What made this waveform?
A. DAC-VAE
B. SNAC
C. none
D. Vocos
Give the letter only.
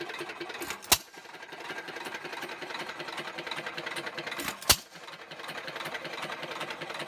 C